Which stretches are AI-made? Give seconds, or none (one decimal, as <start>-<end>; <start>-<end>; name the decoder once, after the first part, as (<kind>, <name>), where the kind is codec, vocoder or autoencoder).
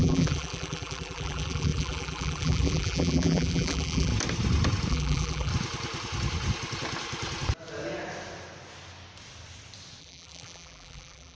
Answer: 0.0-4.1 (vocoder, BigVGAN v2); 4.9-5.5; 10.0-11.3